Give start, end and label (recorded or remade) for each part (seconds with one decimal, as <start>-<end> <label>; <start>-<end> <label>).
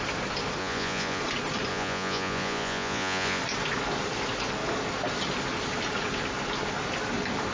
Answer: 0.0-0.6 recorded; 0.6-1.2 remade; 1.2-1.7 recorded; 1.7-3.4 remade; 3.4-7.5 recorded